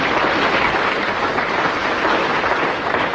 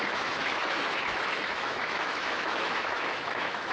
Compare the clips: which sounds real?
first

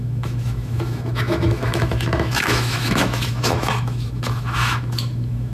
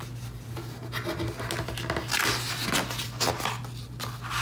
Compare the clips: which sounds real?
second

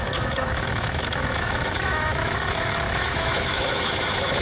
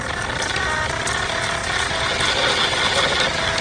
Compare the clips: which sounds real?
second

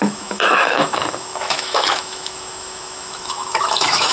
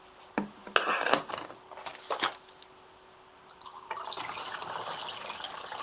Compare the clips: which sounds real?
second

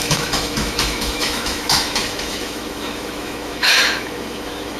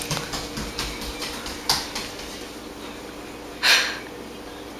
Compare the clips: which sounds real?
second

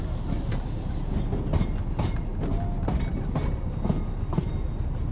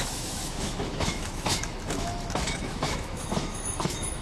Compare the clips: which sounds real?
first